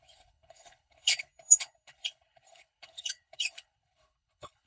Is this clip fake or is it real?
fake